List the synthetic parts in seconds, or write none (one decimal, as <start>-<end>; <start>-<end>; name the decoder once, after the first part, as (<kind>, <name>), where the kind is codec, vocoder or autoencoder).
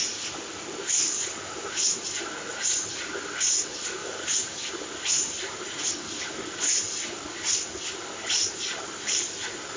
4.0-4.7 (vocoder, BigVGAN v2); 8.4-9.4